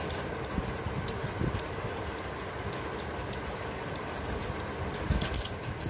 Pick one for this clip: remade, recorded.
recorded